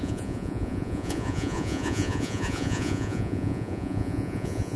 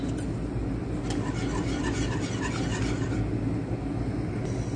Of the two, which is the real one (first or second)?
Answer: second